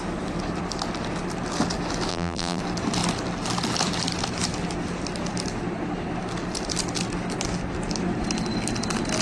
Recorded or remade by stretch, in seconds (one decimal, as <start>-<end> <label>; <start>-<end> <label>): 0.0-2.1 recorded; 2.1-2.6 remade; 2.6-9.2 recorded